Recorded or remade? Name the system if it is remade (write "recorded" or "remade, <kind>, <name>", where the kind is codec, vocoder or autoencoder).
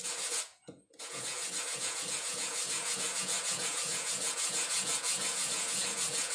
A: remade, vocoder, Vocos